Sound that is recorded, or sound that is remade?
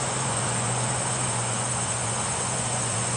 remade